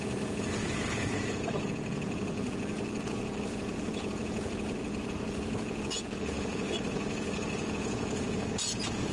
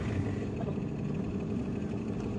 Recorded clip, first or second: second